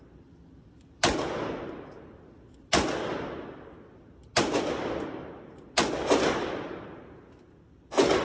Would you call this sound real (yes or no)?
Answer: yes